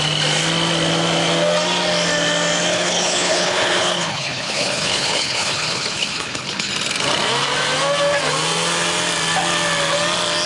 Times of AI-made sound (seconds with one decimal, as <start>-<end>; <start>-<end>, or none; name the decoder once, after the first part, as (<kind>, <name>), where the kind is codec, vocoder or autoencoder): 2.7-6.7 (codec, HILCodec)